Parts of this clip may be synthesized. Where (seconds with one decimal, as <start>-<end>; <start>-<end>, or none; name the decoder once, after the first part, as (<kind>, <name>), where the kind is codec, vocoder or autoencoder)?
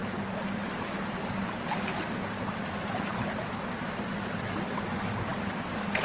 0.0-3.6 (vocoder, BigVGAN v2)